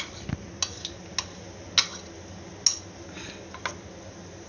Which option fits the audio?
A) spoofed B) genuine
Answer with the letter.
B